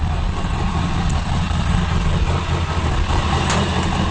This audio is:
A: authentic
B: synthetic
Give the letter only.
A